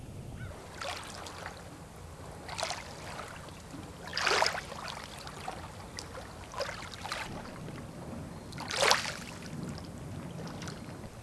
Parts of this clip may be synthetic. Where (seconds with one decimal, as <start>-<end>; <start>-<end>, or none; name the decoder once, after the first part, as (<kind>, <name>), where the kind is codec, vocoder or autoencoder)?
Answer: none